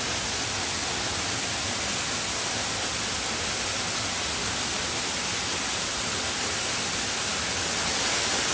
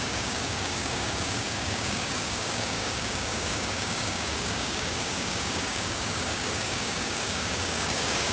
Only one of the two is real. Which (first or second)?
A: first